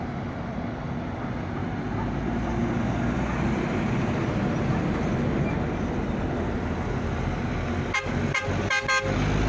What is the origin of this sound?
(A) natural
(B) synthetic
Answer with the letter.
A